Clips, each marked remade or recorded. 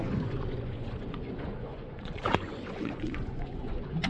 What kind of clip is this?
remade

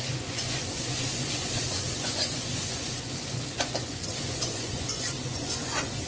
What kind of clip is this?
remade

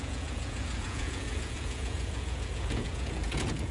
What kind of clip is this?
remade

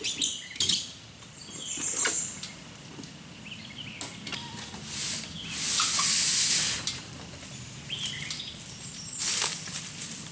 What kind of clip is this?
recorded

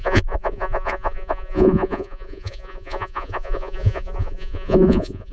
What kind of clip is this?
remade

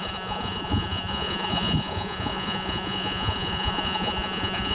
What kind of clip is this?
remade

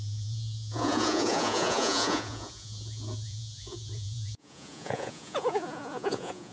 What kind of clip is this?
remade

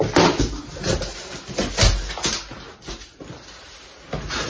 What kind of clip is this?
recorded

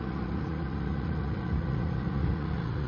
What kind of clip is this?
remade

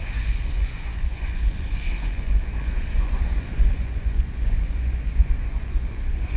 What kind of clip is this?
remade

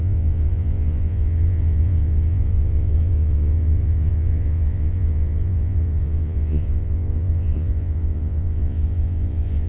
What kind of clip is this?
remade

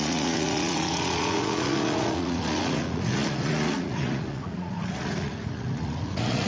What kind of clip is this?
remade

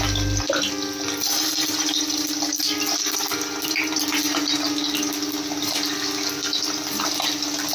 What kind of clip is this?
recorded